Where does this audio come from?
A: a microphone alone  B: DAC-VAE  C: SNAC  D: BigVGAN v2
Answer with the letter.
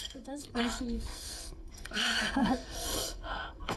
C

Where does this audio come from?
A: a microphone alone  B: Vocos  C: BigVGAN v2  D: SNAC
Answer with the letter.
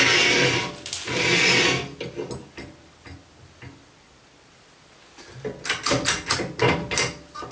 A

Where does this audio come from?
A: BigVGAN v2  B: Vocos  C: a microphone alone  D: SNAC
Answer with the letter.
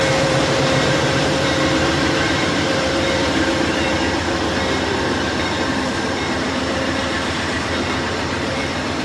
A